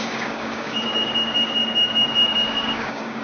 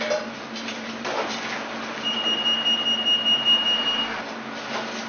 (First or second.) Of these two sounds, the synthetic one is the first